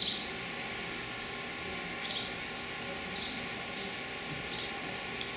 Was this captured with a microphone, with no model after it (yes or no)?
yes